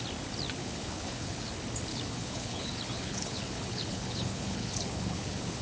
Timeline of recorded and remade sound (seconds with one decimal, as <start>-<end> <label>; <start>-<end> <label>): 0.0-0.6 recorded; 0.6-1.5 remade; 1.5-1.9 recorded; 1.9-5.6 remade